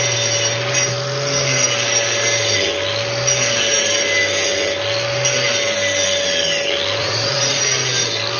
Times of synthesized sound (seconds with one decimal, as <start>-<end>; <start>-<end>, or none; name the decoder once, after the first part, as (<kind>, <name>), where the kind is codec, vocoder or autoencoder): 7.0-7.6 (vocoder, Vocos)